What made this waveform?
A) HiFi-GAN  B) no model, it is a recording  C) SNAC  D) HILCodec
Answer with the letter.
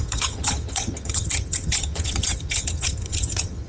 A